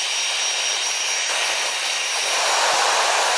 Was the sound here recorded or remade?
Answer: recorded